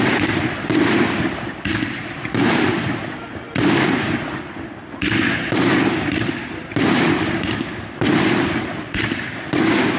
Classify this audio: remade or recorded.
remade